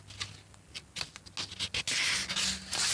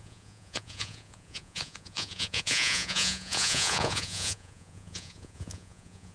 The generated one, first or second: second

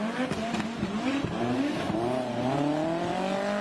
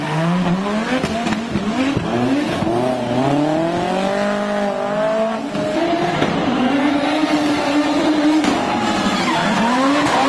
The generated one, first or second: first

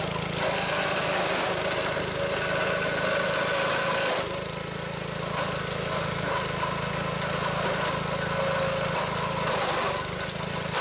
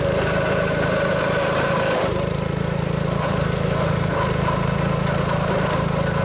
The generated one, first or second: second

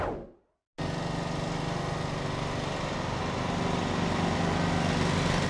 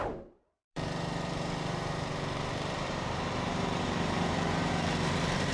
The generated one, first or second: second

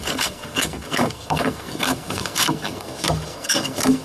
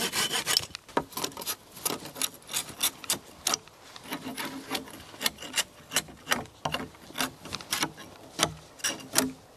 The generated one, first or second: first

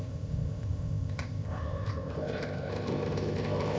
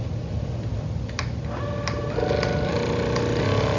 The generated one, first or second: first